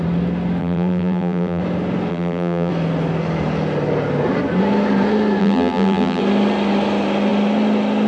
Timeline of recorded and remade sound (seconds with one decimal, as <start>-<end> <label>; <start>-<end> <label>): 0.0-0.6 recorded; 0.6-1.6 remade; 1.6-2.1 recorded; 2.1-2.7 remade; 2.7-5.4 recorded; 5.4-6.2 remade; 6.2-8.1 recorded